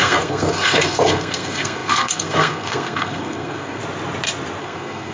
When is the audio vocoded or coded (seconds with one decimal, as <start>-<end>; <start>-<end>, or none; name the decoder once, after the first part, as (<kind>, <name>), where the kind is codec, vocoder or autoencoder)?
0.0-3.8 (codec, SNAC); 4.6-5.1